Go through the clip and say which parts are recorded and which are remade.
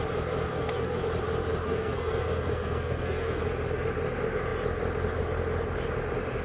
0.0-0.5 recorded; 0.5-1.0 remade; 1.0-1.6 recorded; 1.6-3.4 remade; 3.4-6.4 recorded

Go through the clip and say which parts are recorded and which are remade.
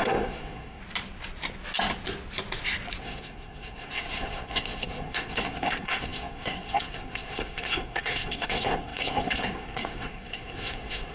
0.0-0.8 remade; 0.8-3.0 recorded; 3.0-11.1 remade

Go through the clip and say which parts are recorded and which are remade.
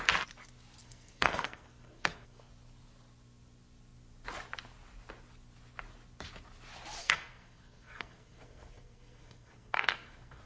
0.0-0.8 recorded; 0.8-2.5 remade; 2.5-7.0 recorded; 7.0-10.4 remade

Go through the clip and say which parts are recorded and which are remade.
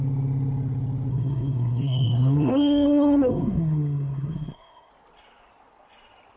0.0-1.1 recorded; 1.1-4.9 remade; 4.9-6.4 recorded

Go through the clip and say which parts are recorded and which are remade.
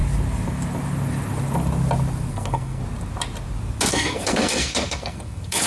0.0-2.3 recorded; 2.3-2.8 remade; 2.8-3.9 recorded; 3.9-5.7 remade